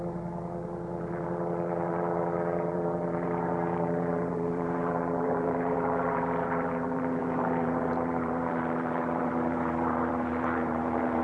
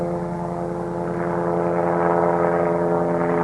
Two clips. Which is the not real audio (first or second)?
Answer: first